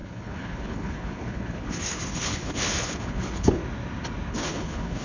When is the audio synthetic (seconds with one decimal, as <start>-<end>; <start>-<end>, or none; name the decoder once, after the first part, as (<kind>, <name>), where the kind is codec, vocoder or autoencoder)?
0.0-3.6 (codec, HILCodec); 4.3-5.0